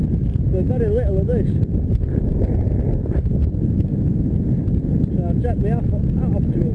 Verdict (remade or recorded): recorded